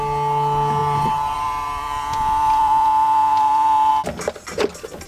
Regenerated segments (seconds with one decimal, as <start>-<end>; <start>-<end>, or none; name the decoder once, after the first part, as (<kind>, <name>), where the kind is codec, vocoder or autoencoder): 0.8-3.9 (vocoder, BigVGAN v2)